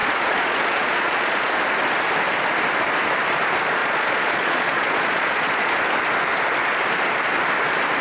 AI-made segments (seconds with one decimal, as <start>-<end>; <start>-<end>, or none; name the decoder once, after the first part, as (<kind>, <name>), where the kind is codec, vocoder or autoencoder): 0.0-1.5 (vocoder, Vocos); 3.8-5.7